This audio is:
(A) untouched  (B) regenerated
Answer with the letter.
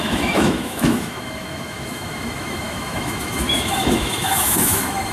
B